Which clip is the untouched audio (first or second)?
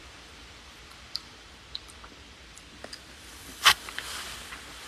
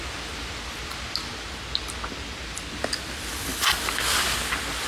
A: second